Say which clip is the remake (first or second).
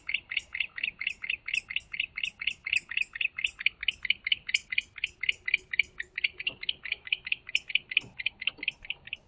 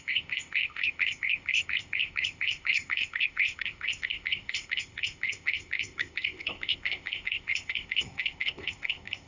second